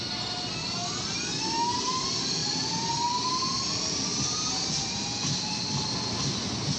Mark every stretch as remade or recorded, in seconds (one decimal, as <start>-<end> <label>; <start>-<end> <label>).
0.0-6.8 recorded